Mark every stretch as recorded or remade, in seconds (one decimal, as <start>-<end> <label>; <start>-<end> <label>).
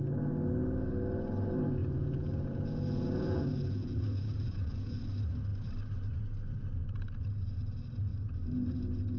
0.0-1.8 recorded; 1.8-5.0 remade; 5.0-9.2 recorded